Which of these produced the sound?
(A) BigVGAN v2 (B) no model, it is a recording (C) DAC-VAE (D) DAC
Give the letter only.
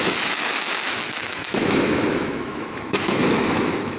C